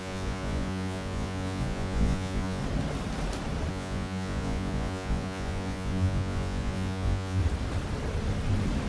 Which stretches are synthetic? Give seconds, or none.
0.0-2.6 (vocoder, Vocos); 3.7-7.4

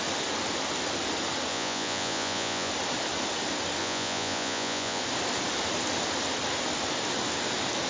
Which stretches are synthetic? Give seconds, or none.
1.5-2.7 (vocoder, Vocos); 3.8-5.0

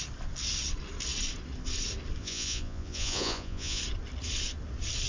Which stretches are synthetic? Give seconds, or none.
2.2-3.8 (vocoder, Vocos)

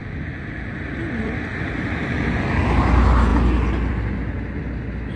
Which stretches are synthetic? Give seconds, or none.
none

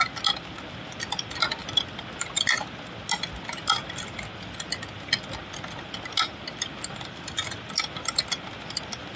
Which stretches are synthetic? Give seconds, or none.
none